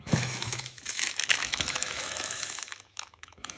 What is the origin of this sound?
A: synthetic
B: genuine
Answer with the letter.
A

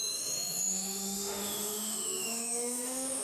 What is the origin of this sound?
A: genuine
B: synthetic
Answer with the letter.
B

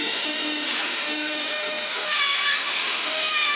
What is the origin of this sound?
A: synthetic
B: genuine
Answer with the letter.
A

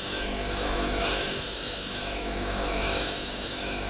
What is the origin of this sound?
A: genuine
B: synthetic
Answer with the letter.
B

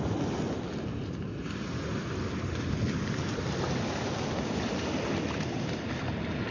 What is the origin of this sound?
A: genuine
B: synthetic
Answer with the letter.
A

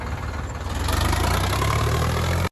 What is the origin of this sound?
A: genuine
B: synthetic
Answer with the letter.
A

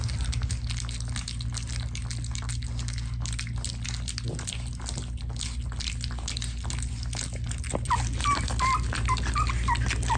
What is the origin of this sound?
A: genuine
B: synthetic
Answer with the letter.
A